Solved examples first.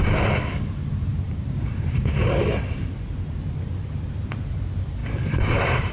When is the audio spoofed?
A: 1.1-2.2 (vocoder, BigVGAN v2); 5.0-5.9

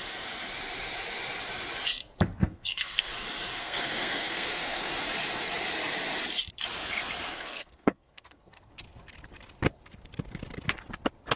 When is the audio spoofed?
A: 2.4-3.1 (codec, SNAC); 3.6-4.9; 7.3-8.7

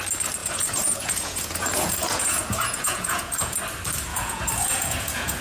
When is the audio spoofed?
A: 0.4-3.6 (vocoder, Vocos); 4.1-5.4